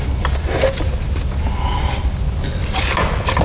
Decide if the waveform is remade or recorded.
recorded